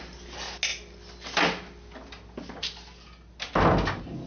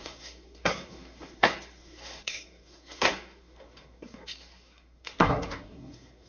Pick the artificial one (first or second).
second